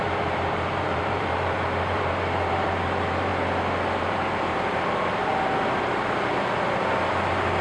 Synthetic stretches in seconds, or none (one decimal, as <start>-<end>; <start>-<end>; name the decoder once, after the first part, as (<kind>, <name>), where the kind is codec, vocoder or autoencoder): 0.0-3.3 (vocoder, BigVGAN v2); 4.0-5.3